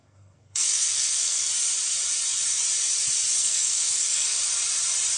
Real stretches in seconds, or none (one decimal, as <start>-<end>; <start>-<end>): 1.5-3.4; 4.4-5.2

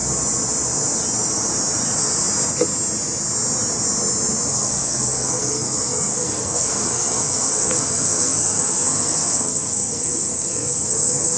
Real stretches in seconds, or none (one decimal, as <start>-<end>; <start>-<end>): 0.0-4.5

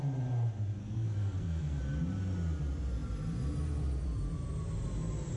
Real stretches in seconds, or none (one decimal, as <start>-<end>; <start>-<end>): 0.0-0.8; 1.8-5.4

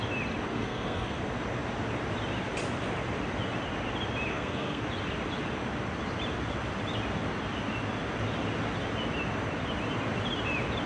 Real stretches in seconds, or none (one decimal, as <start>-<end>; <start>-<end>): 0.0-0.5; 1.2-4.3; 4.8-10.9

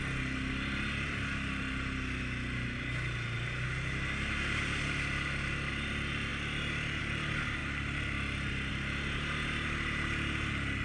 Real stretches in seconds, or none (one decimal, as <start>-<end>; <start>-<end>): 0.0-10.8